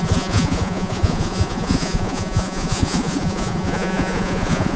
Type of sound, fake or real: fake